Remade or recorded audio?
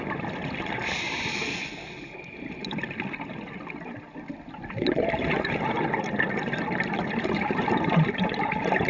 recorded